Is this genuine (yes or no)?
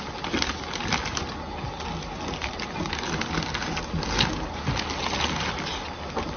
yes